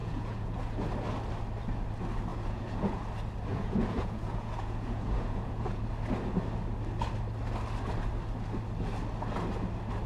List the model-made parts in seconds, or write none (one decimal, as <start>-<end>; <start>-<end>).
0.0-0.6; 2.3-3.0; 3.5-5.8